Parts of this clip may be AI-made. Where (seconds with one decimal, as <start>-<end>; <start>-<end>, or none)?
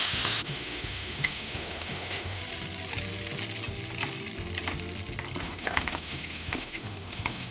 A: 0.0-2.4; 5.4-7.5